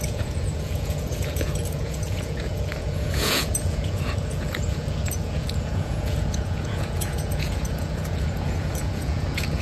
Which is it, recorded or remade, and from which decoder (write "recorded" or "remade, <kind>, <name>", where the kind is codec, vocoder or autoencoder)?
remade, vocoder, Vocos